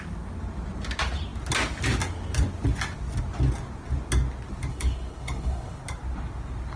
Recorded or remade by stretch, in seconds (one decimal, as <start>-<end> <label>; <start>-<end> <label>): 0.0-4.7 recorded; 4.7-5.8 remade; 5.8-6.8 recorded